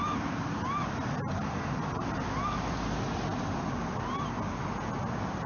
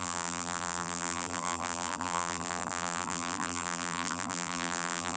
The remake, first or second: second